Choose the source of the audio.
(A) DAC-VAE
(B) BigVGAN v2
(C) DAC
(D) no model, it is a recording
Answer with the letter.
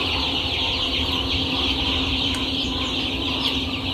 B